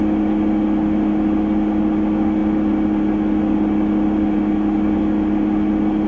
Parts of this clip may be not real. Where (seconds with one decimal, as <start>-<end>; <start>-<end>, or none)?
none